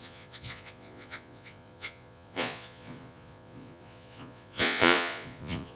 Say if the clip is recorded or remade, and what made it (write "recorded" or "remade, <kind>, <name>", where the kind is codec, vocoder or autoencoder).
remade, vocoder, Vocos